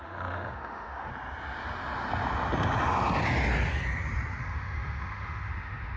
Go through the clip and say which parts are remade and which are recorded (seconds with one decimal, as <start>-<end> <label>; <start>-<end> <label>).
0.0-1.1 remade; 1.1-4.4 recorded; 4.4-6.0 remade